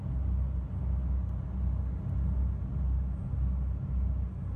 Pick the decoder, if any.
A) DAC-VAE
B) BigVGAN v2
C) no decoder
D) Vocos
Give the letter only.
C